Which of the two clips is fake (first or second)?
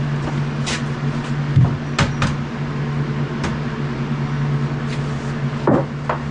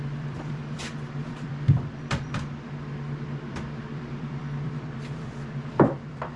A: second